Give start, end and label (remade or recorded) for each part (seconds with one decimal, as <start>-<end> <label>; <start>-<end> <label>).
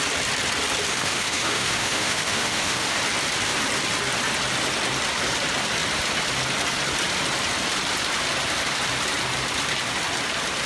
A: 0.0-0.9 recorded; 0.9-3.0 remade; 3.0-10.7 recorded